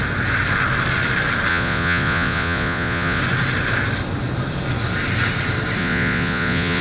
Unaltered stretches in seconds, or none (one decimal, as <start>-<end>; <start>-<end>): 0.0-1.5; 3.2-5.8